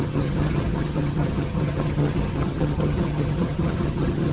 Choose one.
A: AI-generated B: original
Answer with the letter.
A